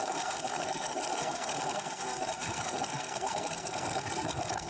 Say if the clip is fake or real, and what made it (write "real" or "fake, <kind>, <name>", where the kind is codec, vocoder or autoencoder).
fake, codec, SNAC